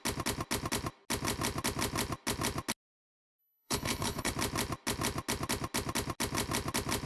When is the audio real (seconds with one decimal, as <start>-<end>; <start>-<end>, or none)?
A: 0.0-3.4; 4.3-7.1